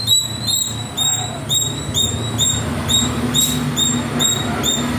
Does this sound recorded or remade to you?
recorded